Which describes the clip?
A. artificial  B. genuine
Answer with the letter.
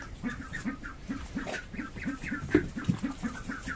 A